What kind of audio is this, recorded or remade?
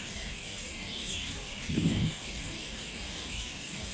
remade